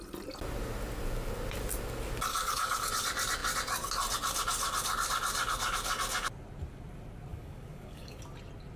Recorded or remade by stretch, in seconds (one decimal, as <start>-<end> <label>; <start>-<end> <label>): 0.0-2.3 recorded; 2.3-2.9 remade; 2.9-7.3 recorded; 7.3-8.2 remade; 8.2-8.8 recorded